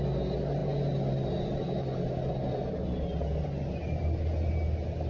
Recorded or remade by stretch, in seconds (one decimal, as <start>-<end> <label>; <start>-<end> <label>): 0.0-5.1 recorded